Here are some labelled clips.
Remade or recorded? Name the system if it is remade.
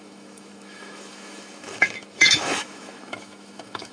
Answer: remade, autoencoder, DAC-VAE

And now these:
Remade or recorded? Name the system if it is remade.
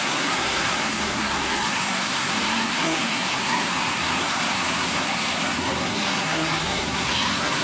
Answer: remade, codec, SNAC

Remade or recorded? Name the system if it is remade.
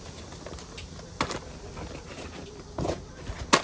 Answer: recorded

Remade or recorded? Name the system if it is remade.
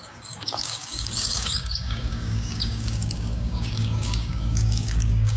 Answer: remade, codec, DAC